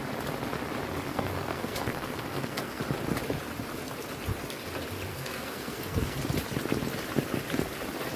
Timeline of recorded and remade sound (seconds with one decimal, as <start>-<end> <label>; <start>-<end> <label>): 0.0-1.1 recorded; 1.1-2.8 remade; 2.8-5.1 recorded; 5.1-6.2 remade; 6.2-8.2 recorded